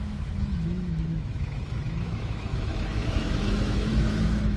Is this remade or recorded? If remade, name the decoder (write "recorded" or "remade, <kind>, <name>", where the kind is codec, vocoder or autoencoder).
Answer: remade, autoencoder, DAC-VAE